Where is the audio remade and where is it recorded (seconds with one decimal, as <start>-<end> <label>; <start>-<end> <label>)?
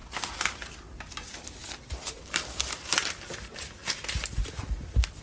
0.0-0.8 remade; 0.8-3.8 recorded; 3.8-4.4 remade; 4.4-5.2 recorded